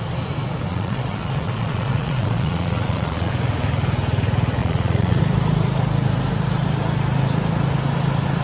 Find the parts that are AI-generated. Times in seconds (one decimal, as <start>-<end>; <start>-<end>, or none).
0.7-3.3; 4.6-5.2